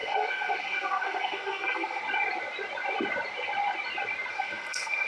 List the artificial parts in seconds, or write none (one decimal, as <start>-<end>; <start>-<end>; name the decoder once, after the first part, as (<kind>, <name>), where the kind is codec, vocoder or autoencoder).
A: 0.0-2.0 (codec, SNAC); 4.3-5.1